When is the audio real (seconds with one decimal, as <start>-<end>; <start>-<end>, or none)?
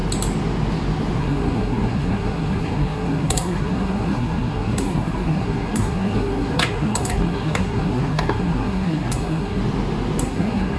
0.0-1.2; 9.6-10.2